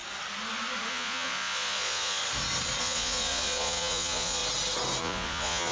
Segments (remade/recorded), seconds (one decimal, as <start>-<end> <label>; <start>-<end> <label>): 0.0-0.9 recorded; 0.9-2.2 remade; 2.2-2.8 recorded; 2.8-4.4 remade; 4.4-5.0 recorded; 5.0-5.7 remade